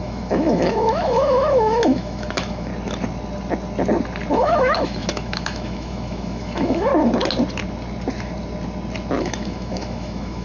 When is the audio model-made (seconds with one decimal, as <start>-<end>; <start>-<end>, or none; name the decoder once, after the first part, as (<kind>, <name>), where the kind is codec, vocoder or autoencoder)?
0.0-2.7 (autoencoder, DAC-VAE); 4.3-6.9; 9.2-10.4